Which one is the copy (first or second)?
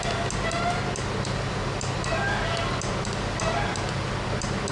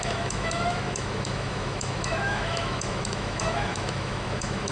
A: second